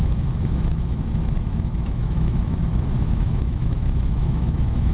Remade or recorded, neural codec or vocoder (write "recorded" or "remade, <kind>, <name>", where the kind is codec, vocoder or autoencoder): remade, autoencoder, DAC-VAE